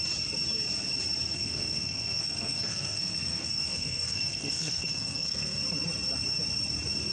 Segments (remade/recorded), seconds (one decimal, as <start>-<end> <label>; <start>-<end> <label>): 0.0-1.3 recorded; 1.3-5.6 remade; 5.6-7.1 recorded